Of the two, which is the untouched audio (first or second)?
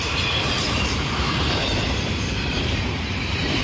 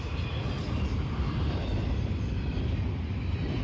second